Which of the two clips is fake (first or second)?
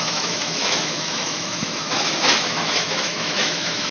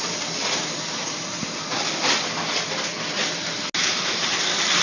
first